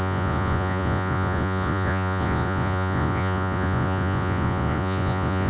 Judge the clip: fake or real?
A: fake